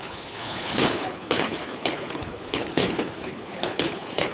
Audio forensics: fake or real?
fake